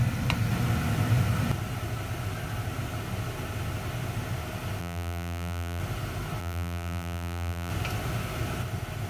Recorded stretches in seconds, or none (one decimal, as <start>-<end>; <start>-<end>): 0.0-4.8; 5.8-6.4; 7.7-9.1